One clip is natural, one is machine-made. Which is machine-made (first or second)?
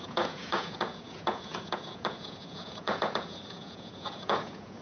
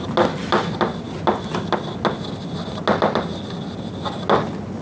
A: first